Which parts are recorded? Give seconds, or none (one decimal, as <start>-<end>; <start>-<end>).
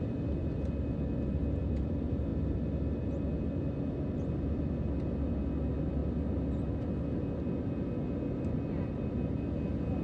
0.0-10.0